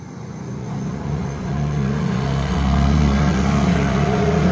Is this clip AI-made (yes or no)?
yes